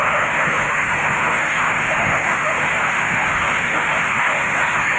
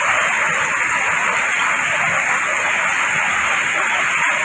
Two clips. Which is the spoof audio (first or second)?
first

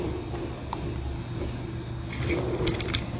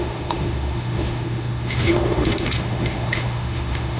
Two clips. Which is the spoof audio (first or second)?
second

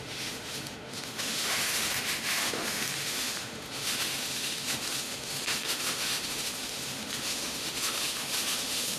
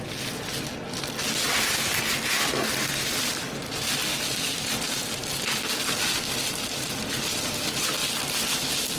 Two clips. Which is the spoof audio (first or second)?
first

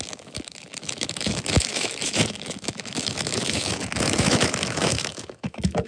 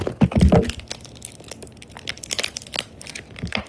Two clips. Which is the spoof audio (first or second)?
first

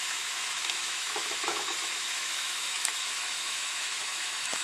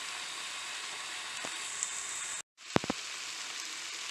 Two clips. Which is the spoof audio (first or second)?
first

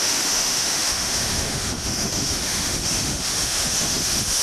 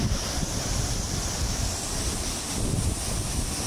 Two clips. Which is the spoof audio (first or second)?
first